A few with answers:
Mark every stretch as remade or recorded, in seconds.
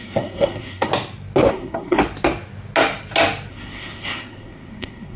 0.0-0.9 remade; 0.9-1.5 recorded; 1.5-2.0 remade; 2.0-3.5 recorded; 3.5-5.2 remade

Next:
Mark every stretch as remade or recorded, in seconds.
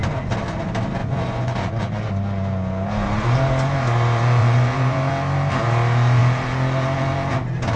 0.0-1.0 recorded; 1.0-2.1 remade; 2.1-4.4 recorded; 4.4-5.1 remade; 5.1-7.8 recorded